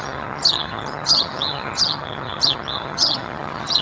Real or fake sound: fake